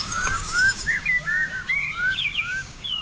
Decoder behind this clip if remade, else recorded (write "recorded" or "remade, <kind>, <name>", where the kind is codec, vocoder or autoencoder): remade, codec, DAC